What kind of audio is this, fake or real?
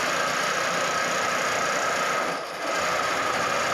real